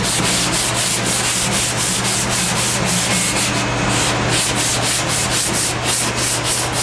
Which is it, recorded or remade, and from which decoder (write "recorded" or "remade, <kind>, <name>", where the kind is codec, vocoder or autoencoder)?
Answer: recorded